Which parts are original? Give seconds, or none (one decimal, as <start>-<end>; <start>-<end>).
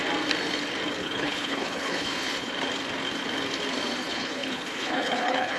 0.0-1.0; 2.5-4.0